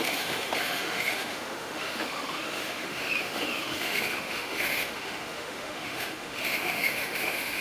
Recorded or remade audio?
remade